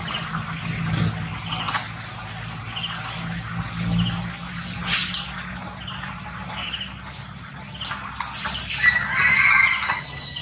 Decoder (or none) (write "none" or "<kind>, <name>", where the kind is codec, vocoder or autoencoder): none